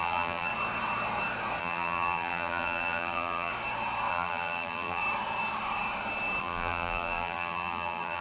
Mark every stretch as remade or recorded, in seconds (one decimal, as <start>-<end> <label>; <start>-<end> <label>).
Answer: 0.0-0.5 remade; 0.5-1.6 recorded; 1.6-3.5 remade; 3.5-4.1 recorded; 4.1-5.0 remade; 5.0-6.4 recorded; 6.4-8.2 remade